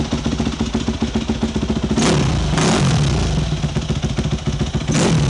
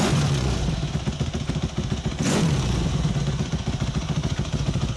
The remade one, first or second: second